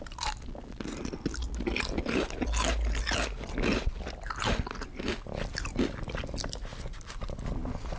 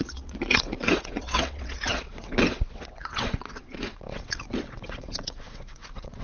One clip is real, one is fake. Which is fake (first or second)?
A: second